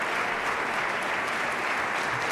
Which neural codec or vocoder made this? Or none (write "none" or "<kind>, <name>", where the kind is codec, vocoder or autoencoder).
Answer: none